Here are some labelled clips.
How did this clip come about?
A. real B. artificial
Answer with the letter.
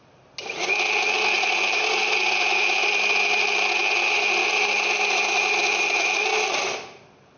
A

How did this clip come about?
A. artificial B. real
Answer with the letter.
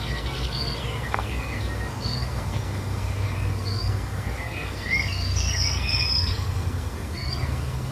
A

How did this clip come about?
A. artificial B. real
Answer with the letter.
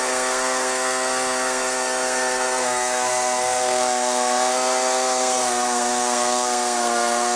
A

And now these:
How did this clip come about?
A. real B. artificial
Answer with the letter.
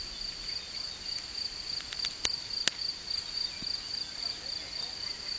A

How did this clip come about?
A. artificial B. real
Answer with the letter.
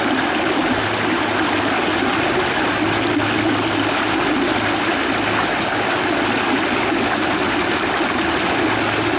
B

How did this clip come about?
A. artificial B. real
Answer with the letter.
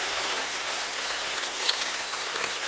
A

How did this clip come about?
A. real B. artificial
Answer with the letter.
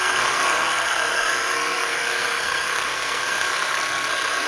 B